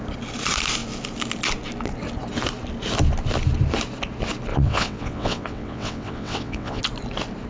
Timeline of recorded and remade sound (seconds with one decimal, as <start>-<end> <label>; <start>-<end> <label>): 0.0-4.5 recorded; 4.5-6.8 remade; 6.8-7.5 recorded